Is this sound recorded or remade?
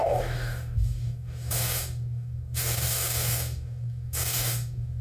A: remade